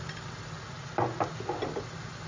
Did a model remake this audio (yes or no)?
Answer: no